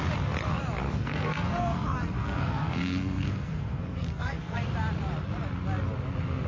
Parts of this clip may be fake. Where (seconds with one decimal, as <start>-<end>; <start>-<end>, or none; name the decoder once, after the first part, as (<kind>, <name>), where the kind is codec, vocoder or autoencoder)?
0.8-4.7 (codec, SNAC)